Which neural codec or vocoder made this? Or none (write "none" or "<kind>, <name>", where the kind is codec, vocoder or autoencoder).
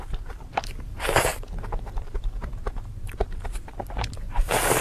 vocoder, BigVGAN v2